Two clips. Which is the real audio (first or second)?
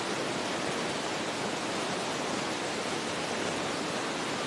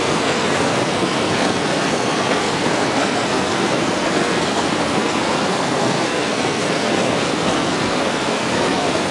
first